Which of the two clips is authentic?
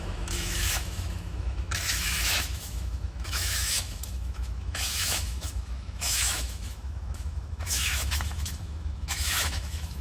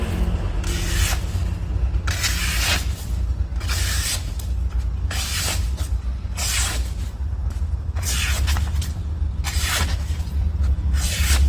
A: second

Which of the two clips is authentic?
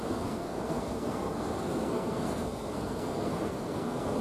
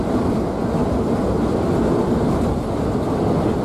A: second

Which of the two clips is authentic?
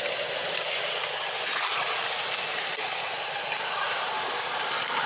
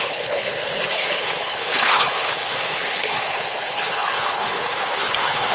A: first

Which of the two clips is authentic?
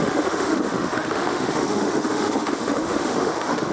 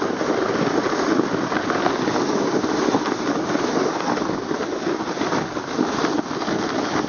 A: second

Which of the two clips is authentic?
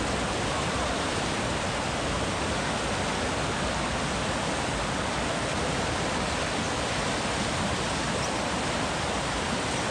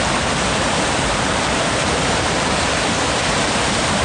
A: first